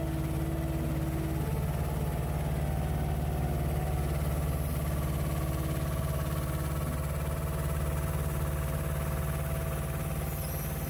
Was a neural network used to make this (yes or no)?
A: no